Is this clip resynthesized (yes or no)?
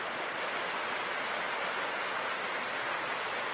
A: no